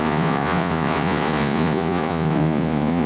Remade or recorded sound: remade